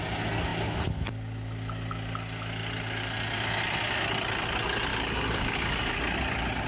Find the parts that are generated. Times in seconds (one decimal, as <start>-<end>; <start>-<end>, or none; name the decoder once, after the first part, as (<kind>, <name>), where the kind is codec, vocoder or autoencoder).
4.9-6.0 (codec, DAC)